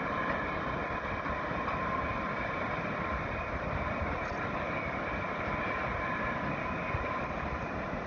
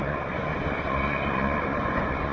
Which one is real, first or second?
first